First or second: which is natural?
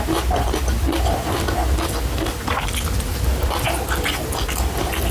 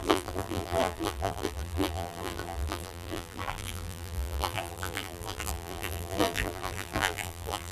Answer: first